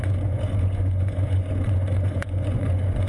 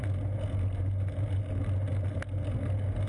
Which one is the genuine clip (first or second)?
second